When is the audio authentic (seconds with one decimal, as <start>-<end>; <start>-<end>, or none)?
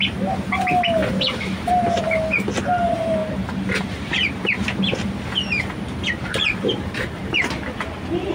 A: 0.0-1.0; 1.7-3.2